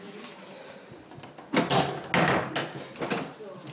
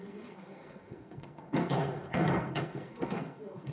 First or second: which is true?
first